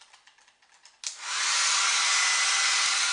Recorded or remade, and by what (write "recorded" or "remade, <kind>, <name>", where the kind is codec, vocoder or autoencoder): recorded